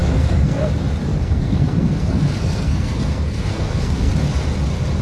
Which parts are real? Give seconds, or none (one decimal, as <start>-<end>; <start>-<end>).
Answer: 0.7-1.1; 4.1-5.0